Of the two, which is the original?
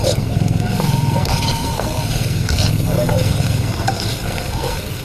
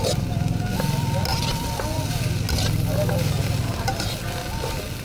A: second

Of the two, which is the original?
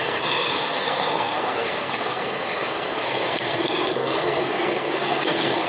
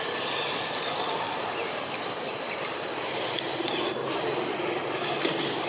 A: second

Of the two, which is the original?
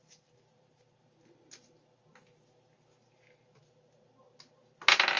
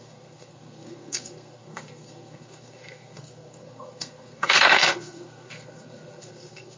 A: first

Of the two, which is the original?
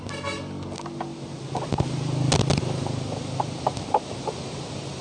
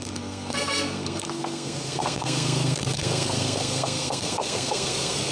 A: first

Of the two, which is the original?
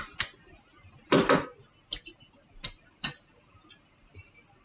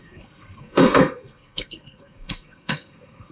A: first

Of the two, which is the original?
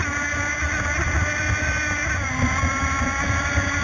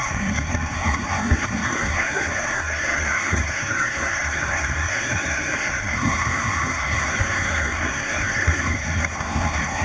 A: first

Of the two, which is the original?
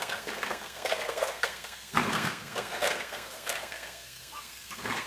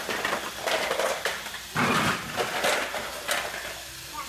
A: second